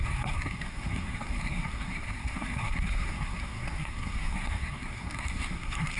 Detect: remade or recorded remade